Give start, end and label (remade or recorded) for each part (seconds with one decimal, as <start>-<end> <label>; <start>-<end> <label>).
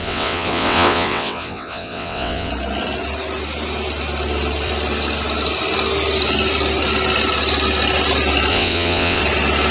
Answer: 0.0-2.5 remade; 2.5-8.5 recorded; 8.5-9.2 remade; 9.2-9.7 recorded